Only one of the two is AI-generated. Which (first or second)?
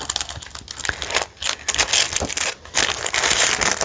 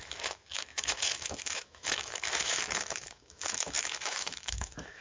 second